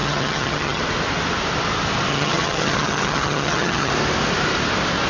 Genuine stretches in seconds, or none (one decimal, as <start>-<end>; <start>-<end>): 0.8-2.1; 3.9-5.1